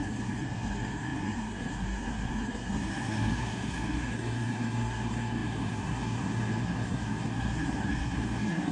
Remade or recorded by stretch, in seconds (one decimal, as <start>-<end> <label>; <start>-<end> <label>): 0.0-8.7 remade